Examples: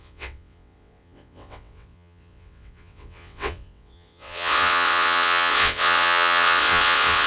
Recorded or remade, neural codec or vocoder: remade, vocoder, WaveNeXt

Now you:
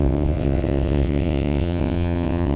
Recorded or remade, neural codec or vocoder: remade, vocoder, WaveNeXt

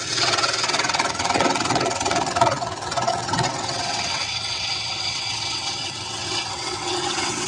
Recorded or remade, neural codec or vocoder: remade, vocoder, WaveNeXt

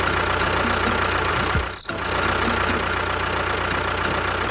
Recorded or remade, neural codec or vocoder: recorded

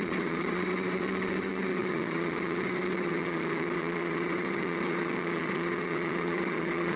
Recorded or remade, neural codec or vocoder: remade, vocoder, WaveNeXt